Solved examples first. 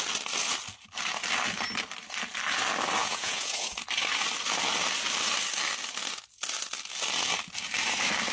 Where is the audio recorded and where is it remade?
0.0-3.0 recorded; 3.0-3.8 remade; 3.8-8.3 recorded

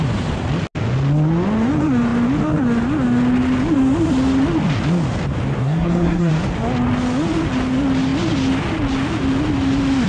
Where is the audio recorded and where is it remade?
0.0-5.6 recorded; 5.6-6.3 remade; 6.3-10.1 recorded

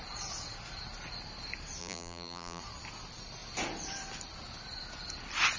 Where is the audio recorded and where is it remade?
0.0-1.8 recorded; 1.8-2.6 remade; 2.6-5.6 recorded

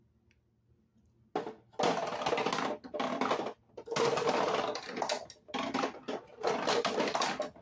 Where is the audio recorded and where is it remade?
0.0-7.6 recorded

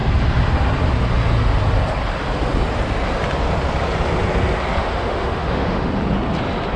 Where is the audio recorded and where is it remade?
0.0-4.8 recorded; 4.8-5.9 remade; 5.9-6.8 recorded

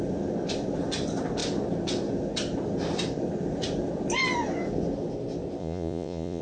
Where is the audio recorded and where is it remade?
0.0-5.6 recorded; 5.6-6.4 remade

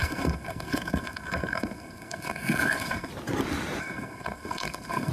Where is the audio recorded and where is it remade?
0.0-3.1 remade; 3.1-3.8 recorded; 3.8-5.1 remade

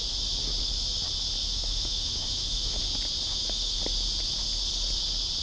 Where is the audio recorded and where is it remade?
0.0-1.4 recorded; 1.4-2.8 remade; 2.8-3.3 recorded; 3.3-3.8 remade; 3.8-5.4 recorded